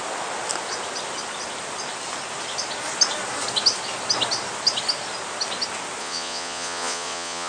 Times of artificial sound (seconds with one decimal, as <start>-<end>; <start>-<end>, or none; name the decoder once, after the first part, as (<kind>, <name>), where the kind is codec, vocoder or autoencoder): 6.0-7.5 (vocoder, Vocos)